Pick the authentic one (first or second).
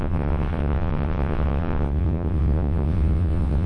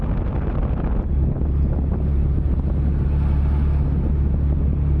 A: second